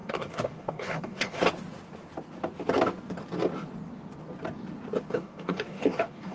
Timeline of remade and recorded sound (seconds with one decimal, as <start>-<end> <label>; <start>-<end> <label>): 0.0-1.4 remade; 1.4-5.1 recorded; 5.1-6.3 remade